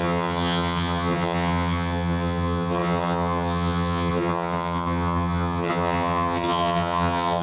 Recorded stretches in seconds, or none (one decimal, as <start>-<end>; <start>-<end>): none